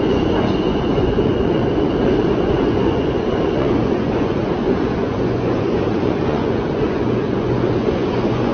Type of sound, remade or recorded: remade